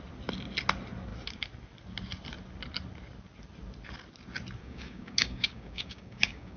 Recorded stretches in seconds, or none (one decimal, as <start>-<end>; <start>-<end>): 0.0-4.6